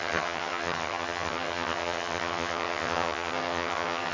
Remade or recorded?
remade